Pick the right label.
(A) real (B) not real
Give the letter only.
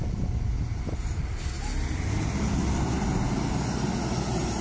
A